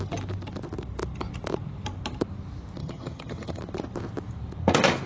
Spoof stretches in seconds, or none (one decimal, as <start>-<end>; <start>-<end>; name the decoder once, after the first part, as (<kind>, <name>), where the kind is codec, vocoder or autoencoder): 2.8-3.6 (vocoder, HiFi-GAN)